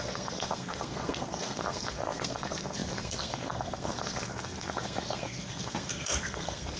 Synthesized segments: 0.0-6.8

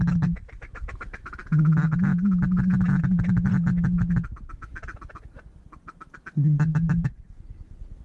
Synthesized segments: 0.0-1.4; 3.0-3.5

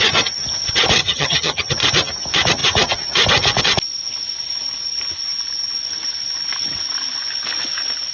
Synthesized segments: 1.0-1.7

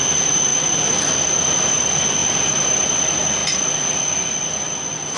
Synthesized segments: none

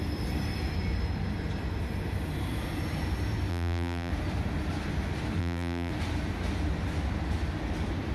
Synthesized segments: 3.5-4.1; 5.4-5.9